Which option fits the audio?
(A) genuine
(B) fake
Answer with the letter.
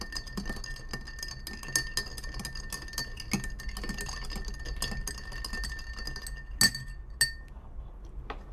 A